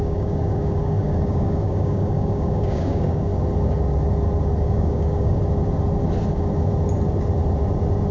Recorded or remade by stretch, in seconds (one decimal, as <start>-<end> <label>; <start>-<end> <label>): 0.0-3.3 remade; 3.3-4.6 recorded; 4.6-5.4 remade; 5.4-8.1 recorded